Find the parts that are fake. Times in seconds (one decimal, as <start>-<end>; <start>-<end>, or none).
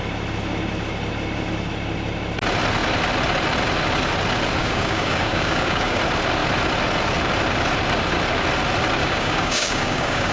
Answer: 4.6-6.0; 9.0-10.3